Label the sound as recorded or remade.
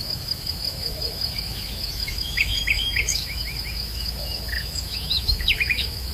remade